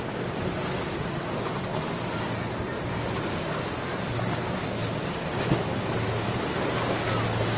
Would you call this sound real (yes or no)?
yes